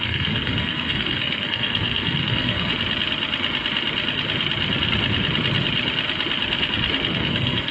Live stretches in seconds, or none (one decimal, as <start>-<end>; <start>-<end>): 2.7-7.1